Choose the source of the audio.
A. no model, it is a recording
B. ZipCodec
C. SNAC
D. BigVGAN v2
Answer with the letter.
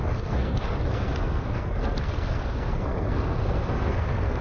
C